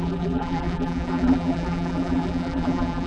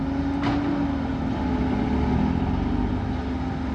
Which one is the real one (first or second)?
second